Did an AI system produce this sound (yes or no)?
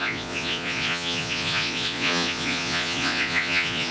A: yes